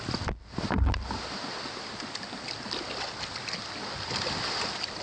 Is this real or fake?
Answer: real